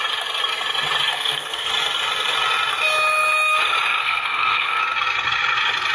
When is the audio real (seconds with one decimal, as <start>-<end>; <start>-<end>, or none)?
0.0-1.1; 1.7-4.0; 4.8-5.9

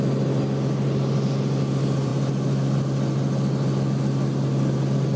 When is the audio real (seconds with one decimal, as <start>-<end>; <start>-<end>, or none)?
0.0-5.2

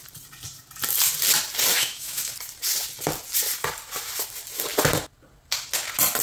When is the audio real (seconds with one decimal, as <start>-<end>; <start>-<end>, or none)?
0.0-1.7; 2.3-6.2

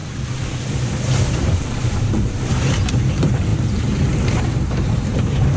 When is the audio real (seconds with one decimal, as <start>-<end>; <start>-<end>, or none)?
0.0-1.3

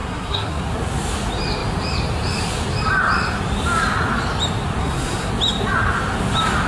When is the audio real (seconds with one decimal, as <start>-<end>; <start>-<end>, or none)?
0.6-4.8; 5.3-6.7

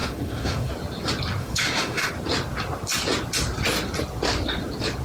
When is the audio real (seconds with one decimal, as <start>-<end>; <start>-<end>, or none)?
0.7-1.4; 2.1-5.0

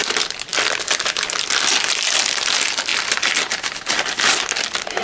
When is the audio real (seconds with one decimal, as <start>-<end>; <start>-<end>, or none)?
0.0-5.0

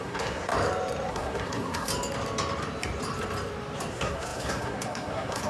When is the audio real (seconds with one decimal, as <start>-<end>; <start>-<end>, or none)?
0.5-1.1; 1.9-3.9